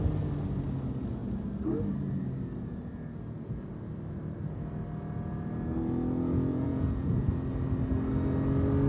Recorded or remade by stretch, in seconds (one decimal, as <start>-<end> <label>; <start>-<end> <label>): 0.0-6.5 recorded; 6.5-7.3 remade; 7.3-8.9 recorded